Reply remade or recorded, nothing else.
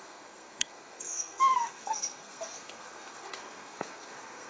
remade